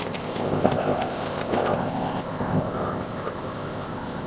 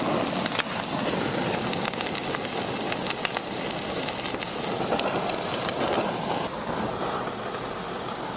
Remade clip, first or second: first